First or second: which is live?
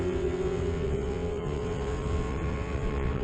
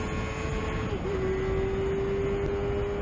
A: second